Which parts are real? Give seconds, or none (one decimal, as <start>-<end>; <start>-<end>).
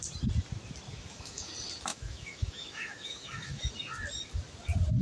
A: 0.0-0.9; 1.5-1.9; 3.7-5.0